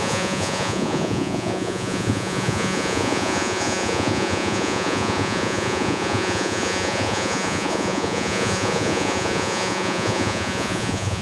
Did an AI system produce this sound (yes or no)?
yes